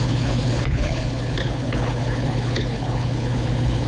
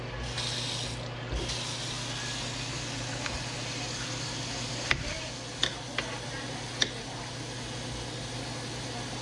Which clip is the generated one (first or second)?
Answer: first